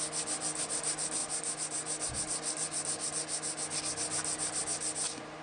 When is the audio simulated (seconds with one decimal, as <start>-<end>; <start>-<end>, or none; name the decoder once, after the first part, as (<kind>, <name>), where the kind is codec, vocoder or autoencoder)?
none